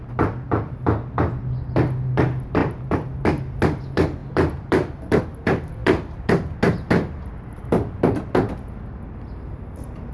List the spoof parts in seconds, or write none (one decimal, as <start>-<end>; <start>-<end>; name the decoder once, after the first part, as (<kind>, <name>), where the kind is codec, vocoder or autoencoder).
2.6-3.2 (vocoder, BigVGAN v2); 4.2-5.2; 5.8-6.5